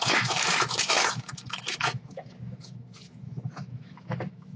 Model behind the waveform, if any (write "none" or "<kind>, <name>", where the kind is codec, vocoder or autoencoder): autoencoder, DAC-VAE